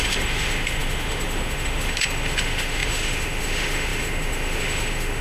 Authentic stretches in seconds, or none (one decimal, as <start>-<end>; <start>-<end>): none